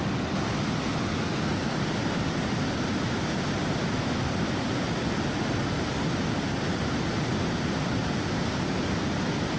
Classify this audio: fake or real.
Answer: real